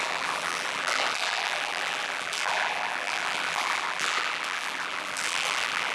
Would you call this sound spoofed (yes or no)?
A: yes